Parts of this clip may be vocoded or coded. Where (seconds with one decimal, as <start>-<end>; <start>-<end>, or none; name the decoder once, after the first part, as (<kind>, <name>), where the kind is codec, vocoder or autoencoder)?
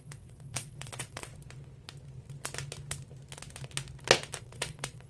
0.0-1.3 (vocoder, WaveNeXt); 4.4-5.1